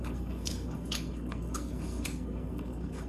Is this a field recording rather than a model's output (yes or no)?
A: no